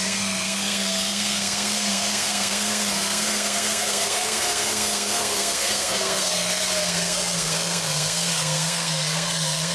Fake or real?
fake